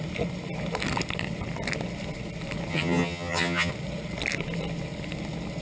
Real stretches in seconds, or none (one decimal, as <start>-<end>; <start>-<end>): 0.0-2.7; 3.7-5.6